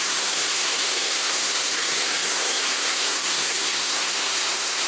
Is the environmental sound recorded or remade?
remade